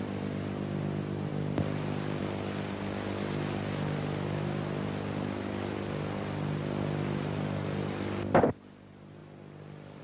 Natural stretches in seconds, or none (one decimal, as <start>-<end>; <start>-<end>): 0.0-10.0